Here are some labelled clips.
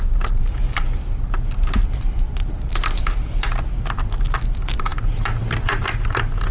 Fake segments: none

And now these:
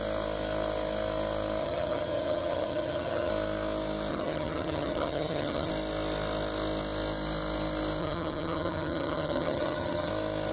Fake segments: 1.6-3.3 (vocoder, HiFi-GAN); 4.1-5.7; 8.0-10.1

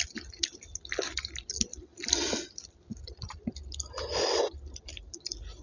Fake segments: none

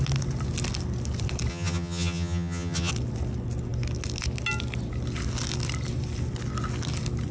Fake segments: 1.5-2.9 (vocoder, HiFi-GAN)

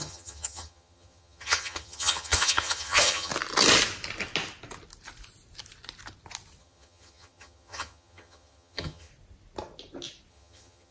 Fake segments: 0.0-3.3 (vocoder, HiFi-GAN); 6.6-9.1; 10.3-10.9

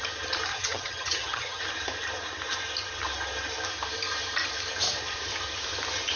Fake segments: 0.5-1.6 (vocoder, HiFi-GAN)

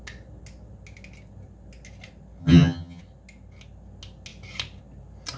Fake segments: 2.4-3.0 (vocoder, HiFi-GAN)

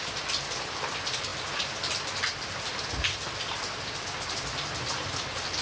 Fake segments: none